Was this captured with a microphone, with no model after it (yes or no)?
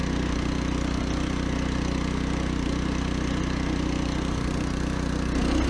yes